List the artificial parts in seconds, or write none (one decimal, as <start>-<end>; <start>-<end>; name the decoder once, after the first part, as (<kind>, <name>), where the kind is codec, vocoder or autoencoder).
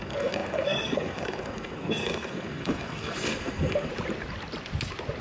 0.0-3.9 (codec, SNAC)